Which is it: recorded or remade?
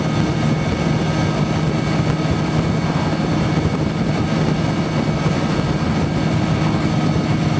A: recorded